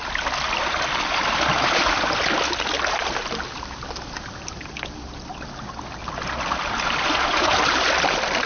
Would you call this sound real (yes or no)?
yes